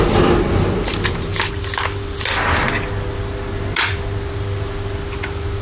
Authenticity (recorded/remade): recorded